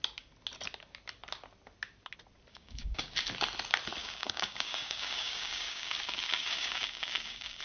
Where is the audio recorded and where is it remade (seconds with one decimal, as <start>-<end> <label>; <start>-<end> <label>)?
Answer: 0.0-2.5 recorded; 2.5-3.1 remade; 3.1-4.0 recorded; 4.0-7.6 remade